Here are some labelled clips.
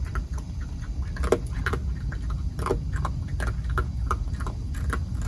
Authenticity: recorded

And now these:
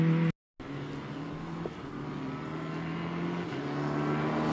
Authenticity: recorded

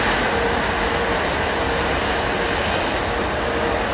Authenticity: recorded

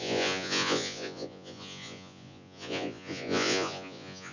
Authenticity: remade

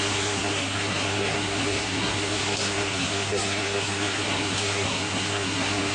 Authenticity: remade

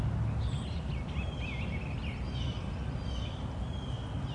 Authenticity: recorded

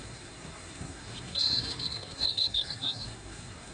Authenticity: remade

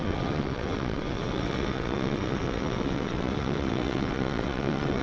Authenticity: remade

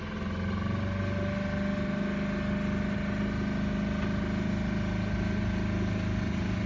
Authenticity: recorded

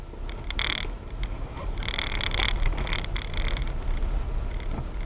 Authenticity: recorded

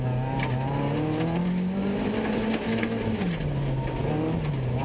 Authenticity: recorded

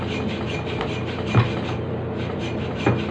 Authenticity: recorded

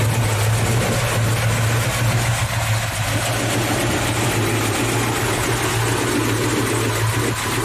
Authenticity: recorded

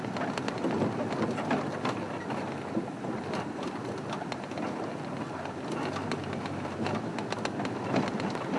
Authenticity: recorded